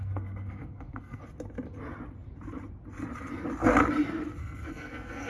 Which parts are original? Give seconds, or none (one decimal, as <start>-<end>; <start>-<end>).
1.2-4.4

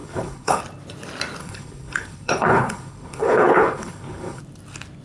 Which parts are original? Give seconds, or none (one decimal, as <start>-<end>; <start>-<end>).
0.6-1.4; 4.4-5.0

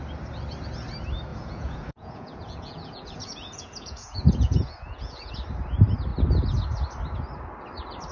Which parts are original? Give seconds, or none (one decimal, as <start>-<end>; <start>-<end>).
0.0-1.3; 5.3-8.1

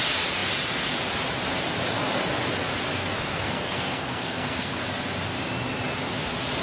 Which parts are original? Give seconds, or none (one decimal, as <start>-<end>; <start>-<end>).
0.0-2.9; 4.8-6.6

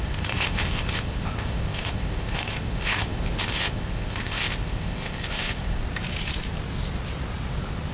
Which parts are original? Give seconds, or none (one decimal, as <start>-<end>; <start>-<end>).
5.8-7.9

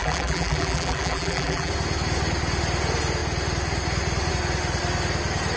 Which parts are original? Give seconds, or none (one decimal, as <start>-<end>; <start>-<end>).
1.7-5.6